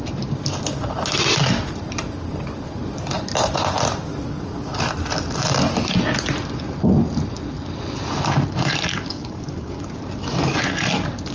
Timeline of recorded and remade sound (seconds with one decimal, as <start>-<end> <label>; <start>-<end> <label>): 0.0-4.1 recorded; 4.1-4.9 remade; 4.9-8.9 recorded; 8.9-10.0 remade; 10.0-11.3 recorded